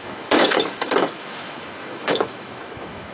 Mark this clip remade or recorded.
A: remade